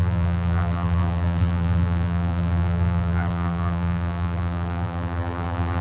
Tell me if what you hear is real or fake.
fake